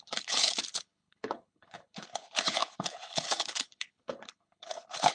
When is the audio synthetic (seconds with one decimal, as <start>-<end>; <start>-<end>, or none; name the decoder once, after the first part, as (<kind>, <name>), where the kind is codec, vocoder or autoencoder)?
0.0-5.1 (codec, HILCodec)